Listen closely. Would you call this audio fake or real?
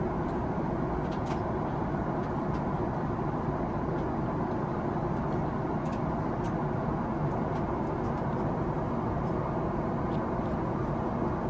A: real